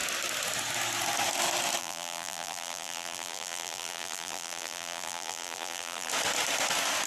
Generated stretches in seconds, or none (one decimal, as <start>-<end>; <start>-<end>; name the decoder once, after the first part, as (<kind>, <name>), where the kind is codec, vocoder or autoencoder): 1.8-6.1 (vocoder, BigVGAN v2)